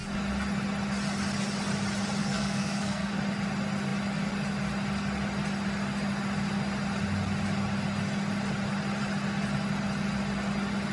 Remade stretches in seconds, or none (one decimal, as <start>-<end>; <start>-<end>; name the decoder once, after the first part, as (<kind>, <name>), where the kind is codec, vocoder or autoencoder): 2.2-3.2 (codec, SNAC)